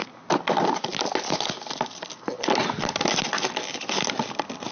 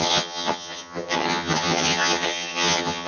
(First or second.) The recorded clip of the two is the first